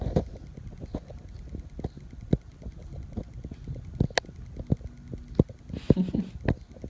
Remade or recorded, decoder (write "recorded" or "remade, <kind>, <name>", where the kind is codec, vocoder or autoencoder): recorded